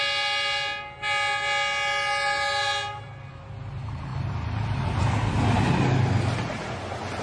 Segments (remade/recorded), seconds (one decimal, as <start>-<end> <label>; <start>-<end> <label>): 0.0-7.2 recorded

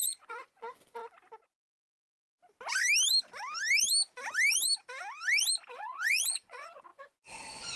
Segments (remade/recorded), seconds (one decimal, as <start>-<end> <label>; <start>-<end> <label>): 0.0-1.0 remade; 1.0-5.7 recorded; 5.7-7.8 remade

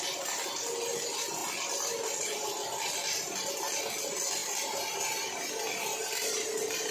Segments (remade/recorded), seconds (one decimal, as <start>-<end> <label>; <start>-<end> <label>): 0.0-6.9 recorded

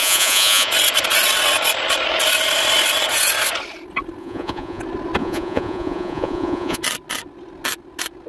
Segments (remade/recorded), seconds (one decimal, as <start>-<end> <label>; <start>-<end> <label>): 0.0-0.7 remade; 0.7-4.2 recorded; 4.2-4.8 remade; 4.8-5.2 recorded; 5.2-6.8 remade; 6.8-8.3 recorded

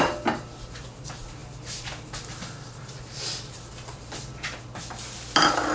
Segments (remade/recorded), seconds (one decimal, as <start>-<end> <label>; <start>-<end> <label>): 0.0-5.7 recorded